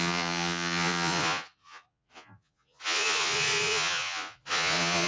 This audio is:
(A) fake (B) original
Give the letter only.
A